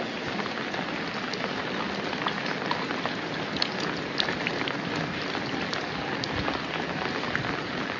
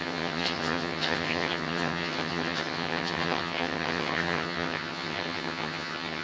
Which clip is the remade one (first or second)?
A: second